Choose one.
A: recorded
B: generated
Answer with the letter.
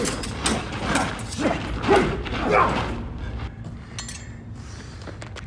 A